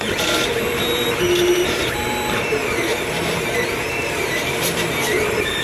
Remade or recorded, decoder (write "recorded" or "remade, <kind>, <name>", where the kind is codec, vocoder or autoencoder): remade, vocoder, BigVGAN v2